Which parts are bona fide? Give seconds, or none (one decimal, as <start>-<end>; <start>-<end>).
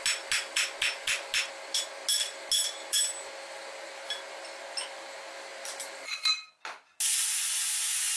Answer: 0.0-8.2